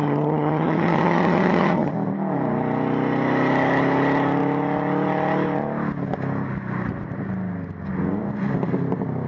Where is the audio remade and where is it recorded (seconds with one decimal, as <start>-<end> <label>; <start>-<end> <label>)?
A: 0.0-1.9 remade; 1.9-9.3 recorded